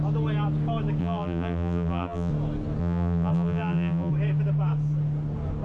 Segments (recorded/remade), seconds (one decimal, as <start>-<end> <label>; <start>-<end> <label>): 0.0-1.0 recorded; 1.0-2.3 remade; 2.3-2.8 recorded; 2.8-4.1 remade; 4.1-5.6 recorded